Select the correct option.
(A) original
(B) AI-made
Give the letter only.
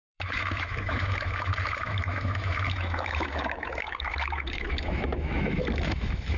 B